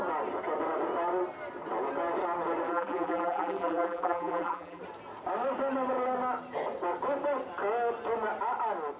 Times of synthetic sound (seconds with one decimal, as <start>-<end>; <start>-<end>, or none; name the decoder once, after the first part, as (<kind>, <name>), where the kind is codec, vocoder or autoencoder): 2.7-4.8 (vocoder, BigVGAN v2)